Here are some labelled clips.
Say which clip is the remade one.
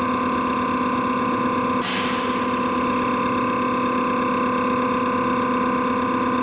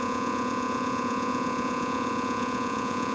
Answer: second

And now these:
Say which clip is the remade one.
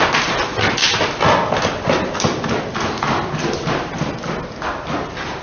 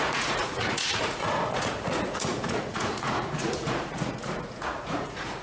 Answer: second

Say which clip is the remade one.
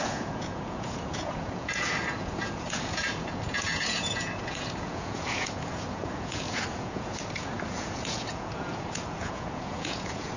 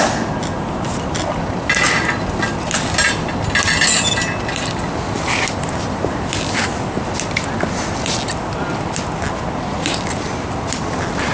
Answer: first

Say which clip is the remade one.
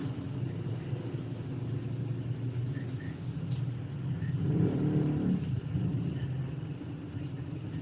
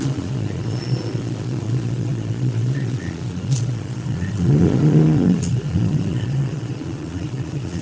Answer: second